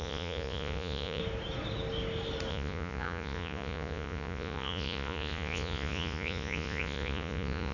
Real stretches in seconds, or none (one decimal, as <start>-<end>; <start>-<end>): 1.2-2.5